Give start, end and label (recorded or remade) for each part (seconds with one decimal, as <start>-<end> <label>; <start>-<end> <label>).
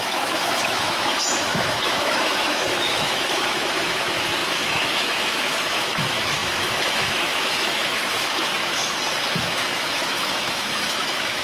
0.0-8.8 remade; 8.8-9.4 recorded; 9.4-11.4 remade